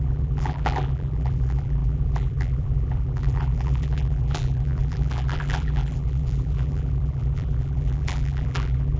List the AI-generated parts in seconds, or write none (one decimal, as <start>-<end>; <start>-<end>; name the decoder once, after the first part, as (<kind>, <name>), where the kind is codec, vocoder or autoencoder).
0.0-9.0 (vocoder, BigVGAN v2)